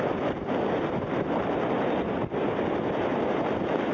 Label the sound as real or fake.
real